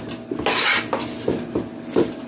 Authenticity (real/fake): real